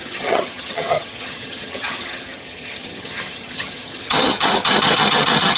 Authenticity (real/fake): fake